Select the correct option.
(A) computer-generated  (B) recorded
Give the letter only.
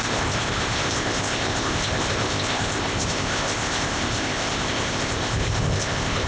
A